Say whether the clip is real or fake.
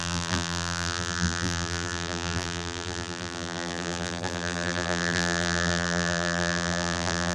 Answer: fake